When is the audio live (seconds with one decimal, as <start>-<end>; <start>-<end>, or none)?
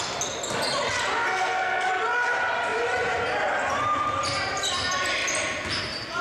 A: 0.0-1.3; 1.9-6.2